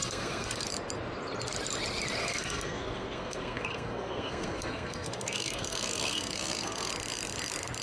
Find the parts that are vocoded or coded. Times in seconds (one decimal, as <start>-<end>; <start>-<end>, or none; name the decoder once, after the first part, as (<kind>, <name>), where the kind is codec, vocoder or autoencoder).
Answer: 0.0-0.6 (codec, SNAC); 2.2-6.9